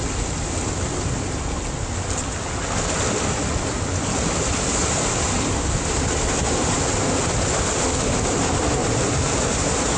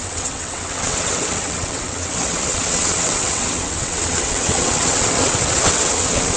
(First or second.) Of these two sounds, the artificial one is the second